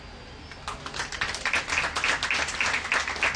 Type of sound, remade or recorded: recorded